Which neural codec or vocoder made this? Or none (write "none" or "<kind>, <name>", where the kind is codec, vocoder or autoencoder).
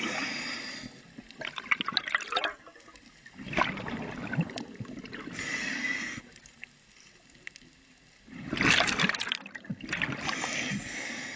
none